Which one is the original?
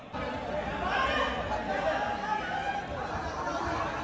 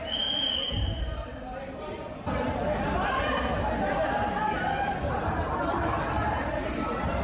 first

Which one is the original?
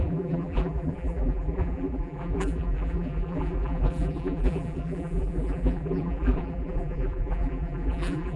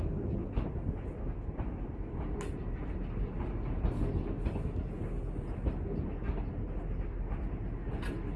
second